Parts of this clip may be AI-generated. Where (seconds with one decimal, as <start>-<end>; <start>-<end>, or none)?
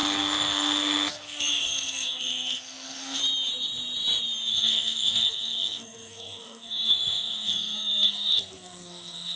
0.0-3.2; 4.5-9.4